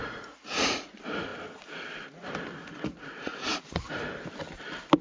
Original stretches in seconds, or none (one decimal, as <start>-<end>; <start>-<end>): 0.9-2.6; 3.9-5.0